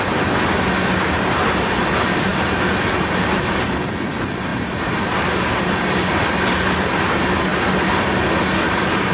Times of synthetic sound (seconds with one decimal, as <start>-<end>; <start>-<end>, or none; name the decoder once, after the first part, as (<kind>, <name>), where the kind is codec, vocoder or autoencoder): none